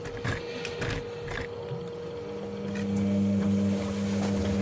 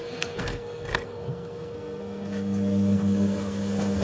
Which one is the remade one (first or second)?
second